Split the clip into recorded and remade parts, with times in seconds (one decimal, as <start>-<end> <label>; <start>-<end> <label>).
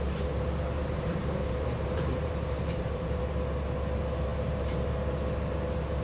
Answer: 0.0-0.8 recorded; 0.8-3.2 remade; 3.2-4.3 recorded; 4.3-4.9 remade; 4.9-6.0 recorded